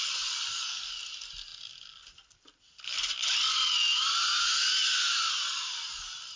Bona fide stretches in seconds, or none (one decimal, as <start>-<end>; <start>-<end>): 0.0-6.4